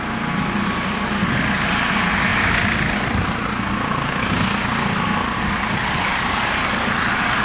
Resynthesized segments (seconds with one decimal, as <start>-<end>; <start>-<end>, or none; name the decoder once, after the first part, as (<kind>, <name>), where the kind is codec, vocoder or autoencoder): none